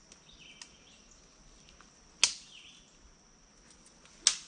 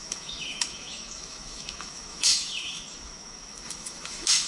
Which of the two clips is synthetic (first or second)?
second